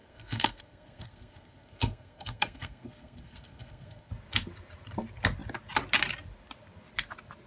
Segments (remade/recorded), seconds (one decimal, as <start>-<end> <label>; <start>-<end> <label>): 0.0-4.1 remade; 4.1-7.5 recorded